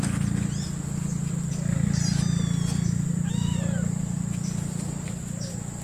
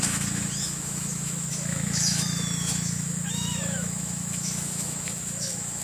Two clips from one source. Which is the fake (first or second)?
second